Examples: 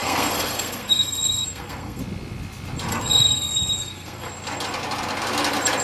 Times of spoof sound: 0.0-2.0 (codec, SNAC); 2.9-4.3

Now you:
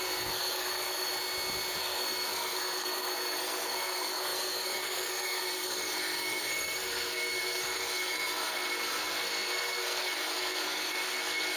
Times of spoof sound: 0.0-1.1 (codec, SNAC); 1.8-11.6

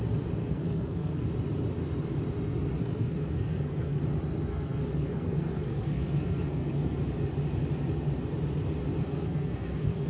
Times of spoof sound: 0.4-1.3 (codec, SNAC); 2.8-4.0; 4.5-7.0; 9.0-10.1

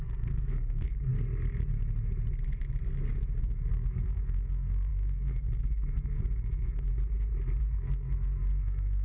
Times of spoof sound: 0.0-1.1 (codec, SNAC); 3.4-6.9; 7.6-9.0

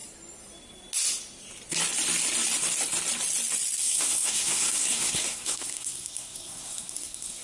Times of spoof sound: 3.8-7.4 (codec, SNAC)